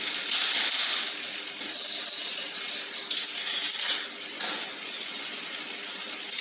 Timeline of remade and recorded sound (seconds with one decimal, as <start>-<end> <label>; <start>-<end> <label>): 0.0-4.3 recorded; 4.3-5.4 remade; 5.4-6.4 recorded